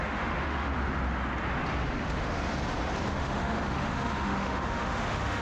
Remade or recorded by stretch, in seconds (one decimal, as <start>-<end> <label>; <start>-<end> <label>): 0.0-0.7 remade; 0.7-2.0 recorded; 2.0-2.5 remade; 2.5-3.1 recorded; 3.1-5.4 remade